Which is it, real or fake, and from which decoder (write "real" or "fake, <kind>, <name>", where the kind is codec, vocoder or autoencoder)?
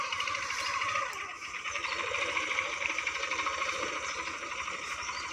fake, vocoder, BigVGAN v2